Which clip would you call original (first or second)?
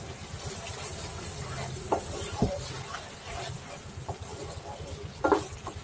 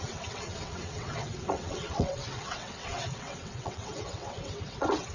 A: first